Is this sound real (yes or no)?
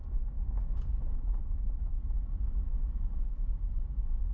yes